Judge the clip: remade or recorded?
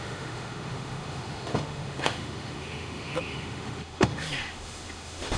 remade